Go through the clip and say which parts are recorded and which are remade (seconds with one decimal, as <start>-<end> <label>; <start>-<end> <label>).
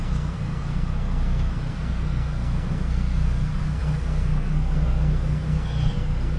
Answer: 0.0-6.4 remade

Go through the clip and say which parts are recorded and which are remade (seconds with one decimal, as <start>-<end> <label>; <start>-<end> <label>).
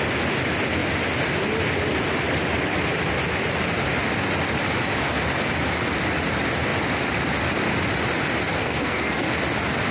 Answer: 0.0-8.6 recorded; 8.6-9.3 remade; 9.3-9.9 recorded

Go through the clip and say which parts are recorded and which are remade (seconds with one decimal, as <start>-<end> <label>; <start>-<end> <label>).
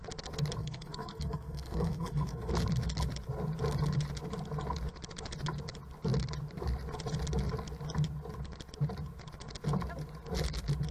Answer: 0.0-0.6 recorded; 0.6-2.5 remade; 2.5-10.9 recorded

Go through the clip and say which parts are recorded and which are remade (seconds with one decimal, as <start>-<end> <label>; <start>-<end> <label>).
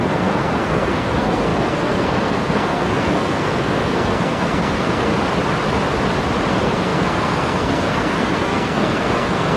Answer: 0.0-5.1 remade; 5.1-6.5 recorded; 6.5-9.6 remade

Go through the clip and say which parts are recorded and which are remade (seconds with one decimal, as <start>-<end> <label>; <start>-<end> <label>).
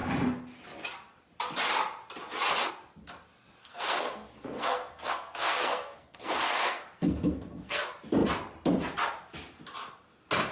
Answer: 0.0-3.6 recorded; 3.6-7.8 remade; 7.8-10.5 recorded